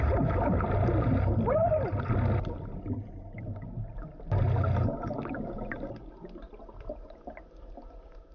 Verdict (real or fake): real